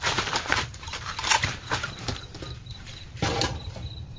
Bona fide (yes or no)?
no